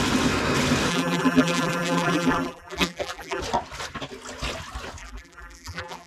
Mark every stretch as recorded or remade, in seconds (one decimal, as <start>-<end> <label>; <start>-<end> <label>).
0.0-0.9 recorded; 0.9-3.4 remade; 3.4-5.0 recorded; 5.0-6.1 remade

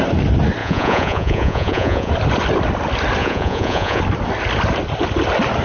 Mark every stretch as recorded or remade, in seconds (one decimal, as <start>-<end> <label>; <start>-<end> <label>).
0.0-0.6 recorded; 0.6-2.1 remade; 2.1-3.2 recorded; 3.2-4.0 remade; 4.0-5.6 recorded

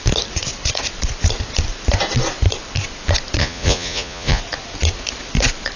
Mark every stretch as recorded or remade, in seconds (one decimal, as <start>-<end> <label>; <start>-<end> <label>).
0.0-3.4 recorded; 3.4-4.4 remade; 4.4-5.8 recorded

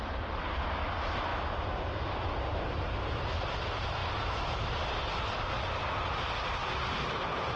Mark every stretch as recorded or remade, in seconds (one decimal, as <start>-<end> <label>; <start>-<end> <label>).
0.0-7.6 recorded

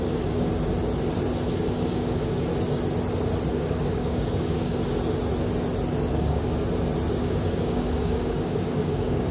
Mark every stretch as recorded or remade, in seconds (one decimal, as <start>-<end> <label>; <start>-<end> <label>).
0.0-0.5 remade; 0.5-1.7 recorded; 1.7-2.5 remade; 2.5-3.5 recorded; 3.5-4.7 remade; 4.7-6.1 recorded; 6.1-6.5 remade; 6.5-7.2 recorded; 7.2-9.3 remade